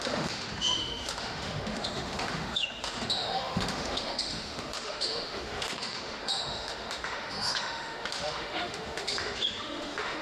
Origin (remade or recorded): remade